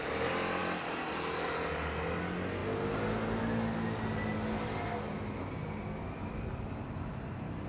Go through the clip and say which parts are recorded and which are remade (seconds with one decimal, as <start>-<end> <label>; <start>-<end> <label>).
0.0-7.7 recorded